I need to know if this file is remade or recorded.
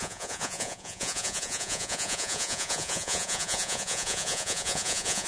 remade